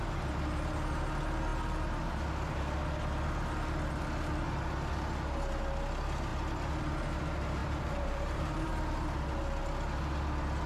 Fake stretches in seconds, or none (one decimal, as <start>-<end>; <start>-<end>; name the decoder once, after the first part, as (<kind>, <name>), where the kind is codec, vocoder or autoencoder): 7.6-8.7 (vocoder, BigVGAN v2)